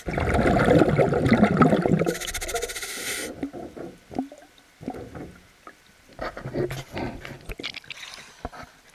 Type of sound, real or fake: real